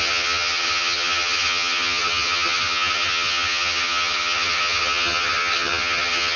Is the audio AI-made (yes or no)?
yes